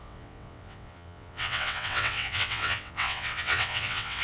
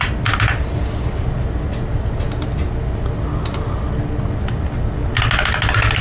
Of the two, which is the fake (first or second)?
first